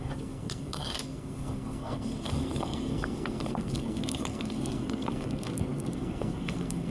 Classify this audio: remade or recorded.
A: remade